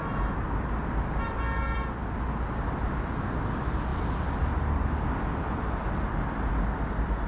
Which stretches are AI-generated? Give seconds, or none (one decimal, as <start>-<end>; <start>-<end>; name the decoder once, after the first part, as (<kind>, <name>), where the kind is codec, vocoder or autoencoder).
none